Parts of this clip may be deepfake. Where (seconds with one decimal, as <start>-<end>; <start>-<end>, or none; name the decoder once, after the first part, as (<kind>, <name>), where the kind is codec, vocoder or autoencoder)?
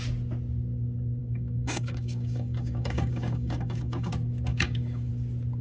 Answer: 1.2-4.1 (codec, DAC); 4.5-5.1